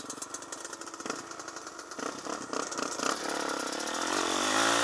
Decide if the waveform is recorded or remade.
recorded